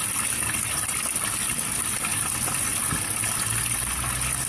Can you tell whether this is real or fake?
real